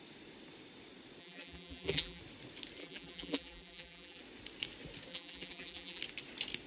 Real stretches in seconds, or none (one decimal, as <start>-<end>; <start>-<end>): 0.0-1.2; 2.2-2.8; 4.2-5.1; 6.0-6.7